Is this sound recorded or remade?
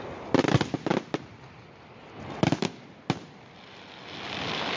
recorded